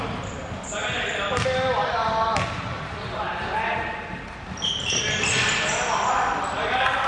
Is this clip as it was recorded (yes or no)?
yes